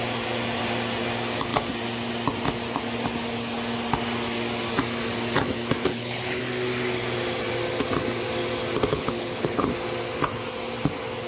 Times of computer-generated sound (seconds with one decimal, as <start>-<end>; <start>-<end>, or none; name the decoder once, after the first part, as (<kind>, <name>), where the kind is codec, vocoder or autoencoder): 5.9-6.4 (codec, HILCodec); 8.9-9.7